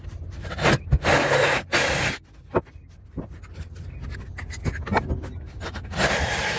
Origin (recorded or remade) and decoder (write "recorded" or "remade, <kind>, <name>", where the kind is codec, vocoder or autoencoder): recorded